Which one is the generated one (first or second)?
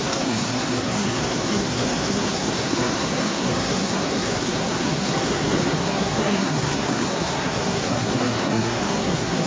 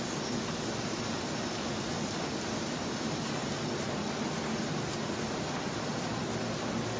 first